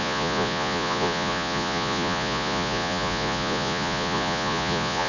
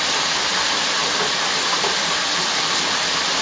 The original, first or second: second